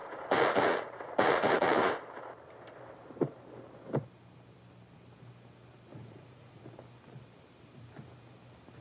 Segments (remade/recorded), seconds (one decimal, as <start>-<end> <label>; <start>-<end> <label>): 0.0-1.9 remade; 1.9-5.9 recorded; 5.9-6.6 remade; 6.6-8.8 recorded